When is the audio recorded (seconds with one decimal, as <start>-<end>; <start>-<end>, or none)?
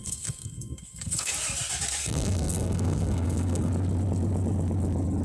1.3-2.0; 3.7-5.2